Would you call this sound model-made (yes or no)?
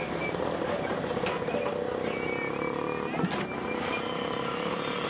no